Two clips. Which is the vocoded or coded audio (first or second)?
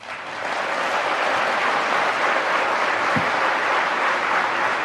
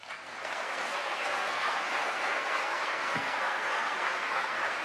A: second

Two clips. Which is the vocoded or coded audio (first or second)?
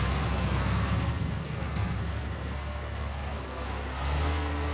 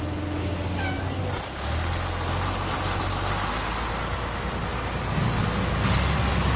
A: first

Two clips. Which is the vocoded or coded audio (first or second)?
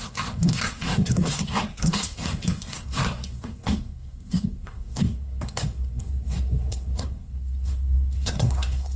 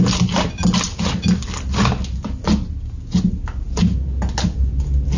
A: first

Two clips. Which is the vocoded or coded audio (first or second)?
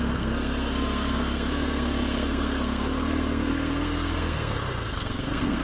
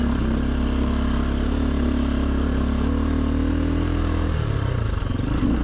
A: first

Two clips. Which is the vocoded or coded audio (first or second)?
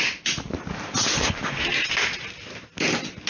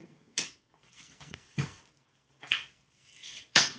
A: second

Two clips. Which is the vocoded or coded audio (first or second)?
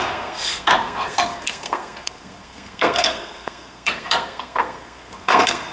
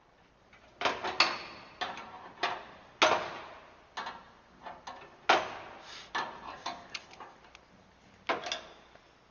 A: first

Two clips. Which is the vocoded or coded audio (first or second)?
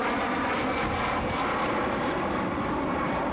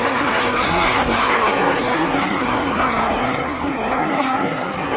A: second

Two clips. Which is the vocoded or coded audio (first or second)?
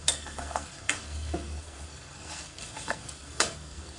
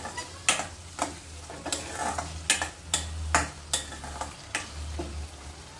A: first